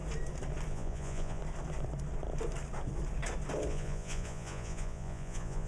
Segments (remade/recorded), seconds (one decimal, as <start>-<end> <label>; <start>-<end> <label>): 0.0-0.7 recorded; 0.7-1.4 remade; 1.4-3.7 recorded; 3.7-5.7 remade